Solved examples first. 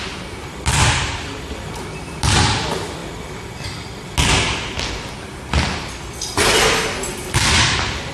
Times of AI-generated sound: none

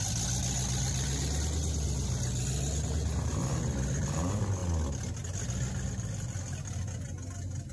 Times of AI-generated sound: none

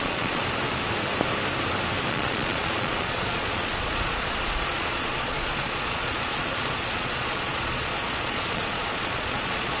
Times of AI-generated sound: 0.0-0.4 (vocoder, Vocos); 2.1-9.8

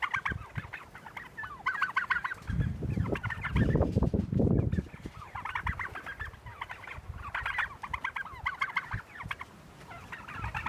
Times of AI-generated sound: none

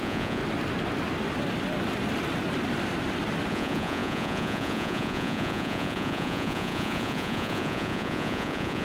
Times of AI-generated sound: 0.0-0.4 (vocoder, Vocos); 3.5-8.8

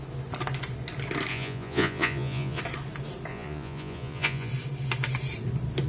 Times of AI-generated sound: 1.3-2.6 (vocoder, Vocos); 3.3-4.5